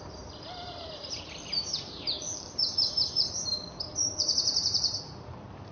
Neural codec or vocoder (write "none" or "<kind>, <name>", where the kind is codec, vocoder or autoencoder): vocoder, BigVGAN v2